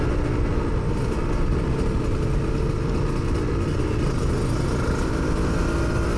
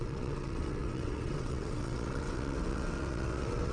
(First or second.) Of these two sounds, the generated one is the second